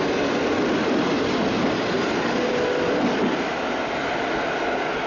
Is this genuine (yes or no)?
yes